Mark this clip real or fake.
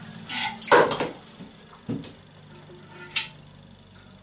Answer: real